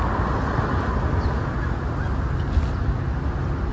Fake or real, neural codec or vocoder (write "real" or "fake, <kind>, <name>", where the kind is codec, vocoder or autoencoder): real